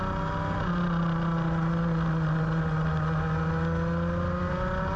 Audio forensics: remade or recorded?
recorded